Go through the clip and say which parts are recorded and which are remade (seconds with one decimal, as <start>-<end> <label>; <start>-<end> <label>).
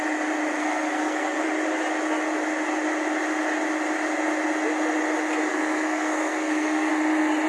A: 0.0-0.6 recorded; 0.6-1.5 remade; 1.5-5.5 recorded; 5.5-6.9 remade; 6.9-7.5 recorded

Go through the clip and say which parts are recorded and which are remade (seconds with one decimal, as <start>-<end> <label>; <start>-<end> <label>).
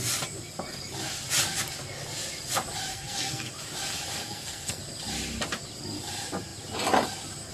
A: 0.0-2.9 recorded; 2.9-3.5 remade; 3.5-4.2 recorded; 4.2-4.8 remade; 4.8-7.5 recorded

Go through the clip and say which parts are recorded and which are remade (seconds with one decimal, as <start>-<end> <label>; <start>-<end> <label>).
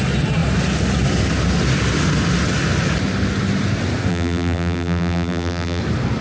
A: 0.0-4.1 recorded; 4.1-5.8 remade; 5.8-6.2 recorded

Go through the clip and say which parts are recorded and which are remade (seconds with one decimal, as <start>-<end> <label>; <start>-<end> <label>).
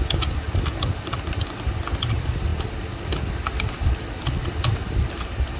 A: 0.0-5.6 recorded